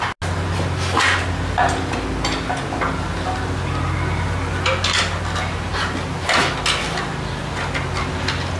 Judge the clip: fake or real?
real